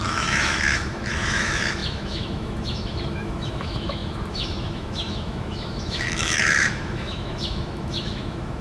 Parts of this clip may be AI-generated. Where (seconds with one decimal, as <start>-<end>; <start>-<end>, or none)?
0.0-8.6